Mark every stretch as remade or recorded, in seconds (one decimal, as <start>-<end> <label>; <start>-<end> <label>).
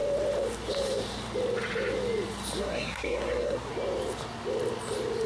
0.0-2.6 recorded; 2.6-3.7 remade; 3.7-5.3 recorded